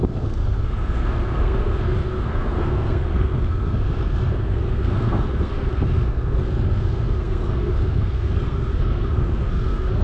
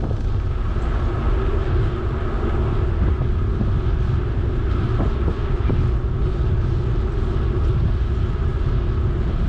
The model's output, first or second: first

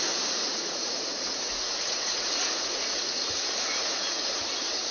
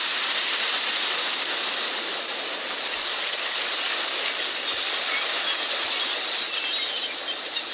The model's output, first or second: first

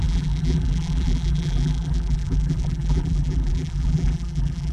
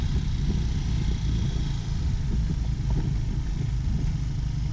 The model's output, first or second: first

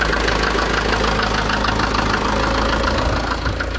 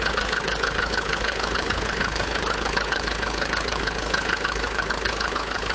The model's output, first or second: second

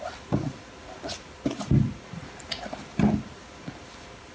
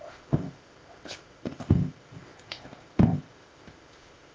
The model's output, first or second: second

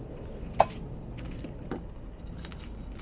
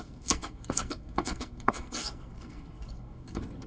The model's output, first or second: second